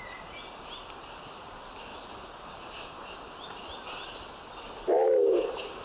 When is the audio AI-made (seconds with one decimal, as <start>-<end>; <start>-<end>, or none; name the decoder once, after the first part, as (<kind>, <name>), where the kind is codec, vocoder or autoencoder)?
none